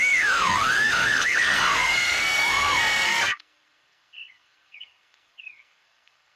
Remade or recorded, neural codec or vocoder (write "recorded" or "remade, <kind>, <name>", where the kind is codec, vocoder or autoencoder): remade, codec, SNAC